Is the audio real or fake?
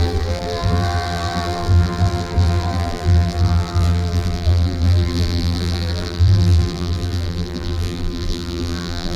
fake